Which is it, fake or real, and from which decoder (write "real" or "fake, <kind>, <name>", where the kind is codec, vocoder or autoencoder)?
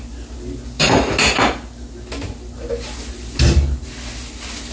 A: real